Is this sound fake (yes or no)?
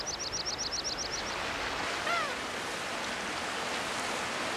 no